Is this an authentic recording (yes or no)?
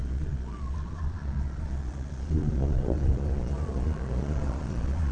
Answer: no